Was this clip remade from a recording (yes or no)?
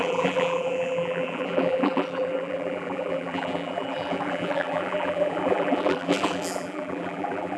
yes